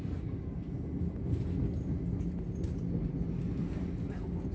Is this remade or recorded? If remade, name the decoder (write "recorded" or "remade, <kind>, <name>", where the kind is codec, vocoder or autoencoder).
recorded